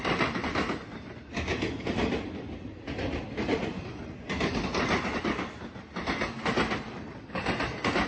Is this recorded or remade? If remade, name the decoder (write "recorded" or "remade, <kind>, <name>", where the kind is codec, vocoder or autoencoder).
recorded